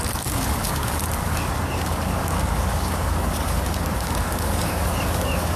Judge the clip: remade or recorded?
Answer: remade